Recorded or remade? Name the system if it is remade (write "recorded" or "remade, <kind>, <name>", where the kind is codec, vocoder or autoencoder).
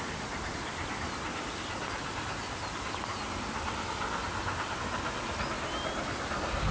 recorded